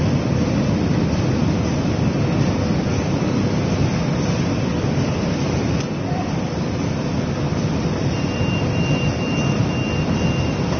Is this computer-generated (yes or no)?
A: no